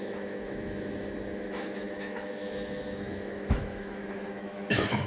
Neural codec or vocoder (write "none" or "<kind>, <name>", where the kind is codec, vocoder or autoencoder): autoencoder, DAC-VAE